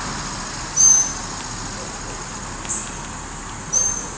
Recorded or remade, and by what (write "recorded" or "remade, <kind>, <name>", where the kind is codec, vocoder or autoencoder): recorded